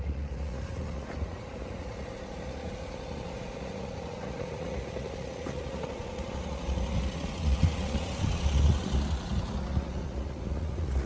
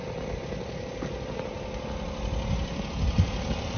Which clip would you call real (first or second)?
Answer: second